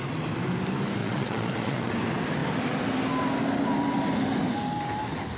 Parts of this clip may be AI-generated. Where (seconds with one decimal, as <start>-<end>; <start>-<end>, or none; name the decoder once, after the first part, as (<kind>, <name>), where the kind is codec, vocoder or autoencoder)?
1.0-1.9 (vocoder, Vocos)